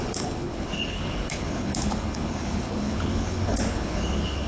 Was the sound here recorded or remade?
remade